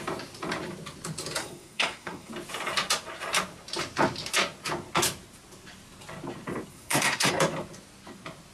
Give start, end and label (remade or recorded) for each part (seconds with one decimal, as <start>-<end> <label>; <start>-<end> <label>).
0.0-1.4 recorded; 1.4-2.3 remade; 2.3-6.7 recorded; 6.7-7.3 remade; 7.3-8.5 recorded